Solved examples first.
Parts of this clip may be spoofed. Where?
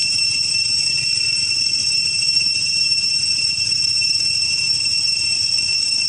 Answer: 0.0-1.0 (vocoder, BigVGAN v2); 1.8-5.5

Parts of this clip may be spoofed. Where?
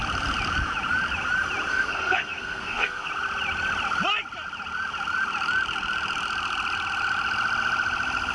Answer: 1.7-3.1 (codec, SNAC)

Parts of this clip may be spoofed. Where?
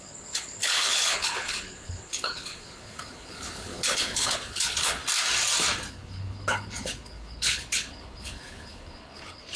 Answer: 0.0-5.0 (codec, HILCodec); 5.9-9.6